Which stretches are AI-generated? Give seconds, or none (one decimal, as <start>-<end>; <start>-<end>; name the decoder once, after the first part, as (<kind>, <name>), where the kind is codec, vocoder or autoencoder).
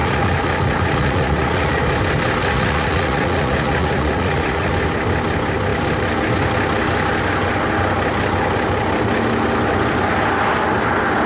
0.0-1.8 (vocoder, Vocos); 2.4-4.7